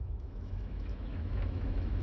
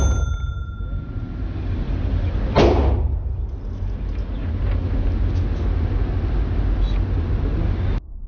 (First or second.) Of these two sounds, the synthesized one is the first